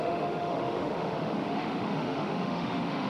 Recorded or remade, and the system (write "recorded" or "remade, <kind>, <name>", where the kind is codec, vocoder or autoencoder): remade, autoencoder, DAC-VAE